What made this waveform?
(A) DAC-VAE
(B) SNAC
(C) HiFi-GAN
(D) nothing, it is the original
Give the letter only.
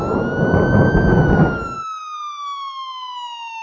D